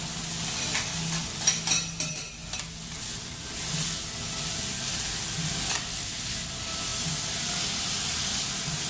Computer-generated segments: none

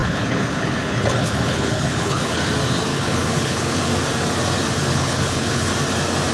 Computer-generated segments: 0.0-2.5; 2.9-3.9; 4.9-5.7

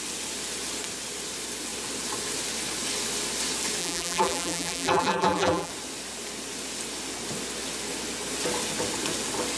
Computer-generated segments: 3.8-5.7